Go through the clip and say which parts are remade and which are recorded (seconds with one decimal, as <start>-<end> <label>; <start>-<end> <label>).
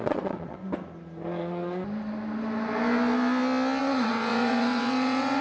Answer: 0.0-0.6 remade; 0.6-3.8 recorded; 3.8-5.4 remade